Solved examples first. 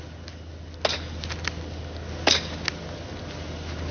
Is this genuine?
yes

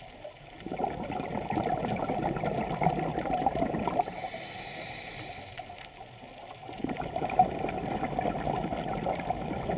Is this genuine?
yes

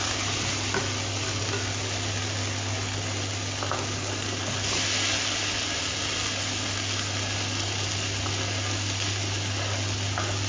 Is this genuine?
yes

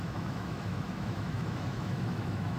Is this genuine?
no